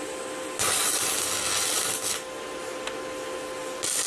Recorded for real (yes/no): yes